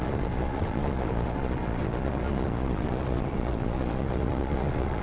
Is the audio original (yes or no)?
no